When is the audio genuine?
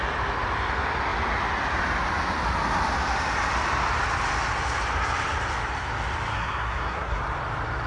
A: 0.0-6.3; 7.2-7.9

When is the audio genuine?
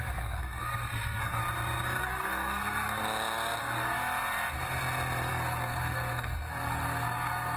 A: 1.4-2.0; 3.0-3.6; 4.0-5.3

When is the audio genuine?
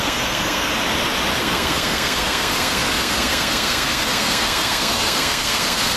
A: 0.7-1.4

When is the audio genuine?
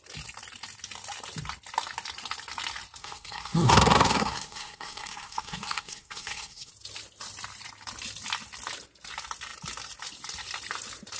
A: 0.0-3.0; 6.7-11.2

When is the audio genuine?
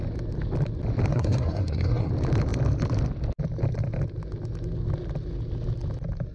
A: 0.0-1.1; 2.1-6.3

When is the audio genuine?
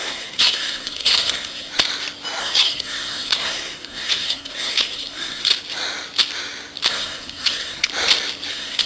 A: 1.7-2.4; 5.5-6.9; 7.9-8.5